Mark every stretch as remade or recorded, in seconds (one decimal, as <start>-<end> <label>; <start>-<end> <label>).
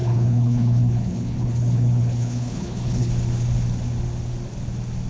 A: 0.0-3.1 remade; 3.1-5.1 recorded